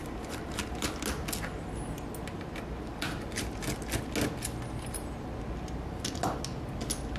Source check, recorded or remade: recorded